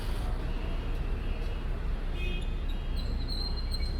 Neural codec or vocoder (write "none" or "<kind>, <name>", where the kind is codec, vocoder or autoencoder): none